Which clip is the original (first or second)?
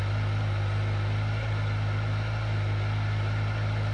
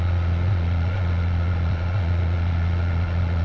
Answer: first